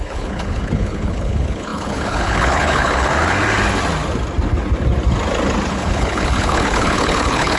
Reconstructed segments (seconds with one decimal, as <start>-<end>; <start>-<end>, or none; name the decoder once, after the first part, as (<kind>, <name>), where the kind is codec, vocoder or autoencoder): 0.0-3.1 (codec, HILCodec); 5.7-7.6